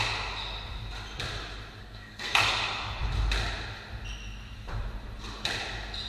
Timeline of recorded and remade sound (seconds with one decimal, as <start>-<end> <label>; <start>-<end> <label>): 0.0-1.8 recorded; 1.8-2.4 remade; 2.4-6.1 recorded